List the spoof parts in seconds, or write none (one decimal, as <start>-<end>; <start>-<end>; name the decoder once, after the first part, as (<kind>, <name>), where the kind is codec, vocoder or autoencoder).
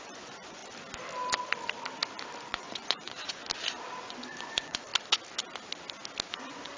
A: 0.0-0.6 (vocoder, Vocos); 2.5-3.4; 4.0-4.9; 6.3-6.8